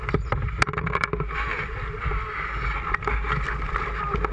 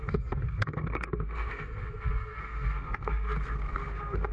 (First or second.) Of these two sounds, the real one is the first